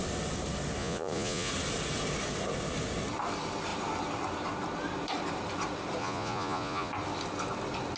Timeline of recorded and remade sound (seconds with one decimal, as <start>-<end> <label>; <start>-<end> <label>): 0.0-0.8 recorded; 0.8-1.5 remade; 1.5-6.0 recorded; 6.0-6.9 remade; 6.9-8.0 recorded